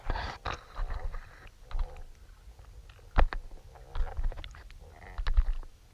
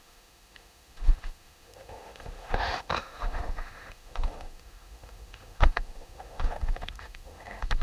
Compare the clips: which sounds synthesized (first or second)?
second